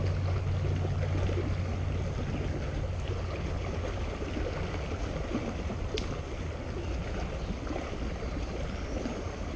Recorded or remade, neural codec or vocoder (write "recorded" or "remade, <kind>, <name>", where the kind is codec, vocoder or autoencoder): recorded